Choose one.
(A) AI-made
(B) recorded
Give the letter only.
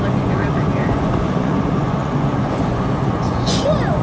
A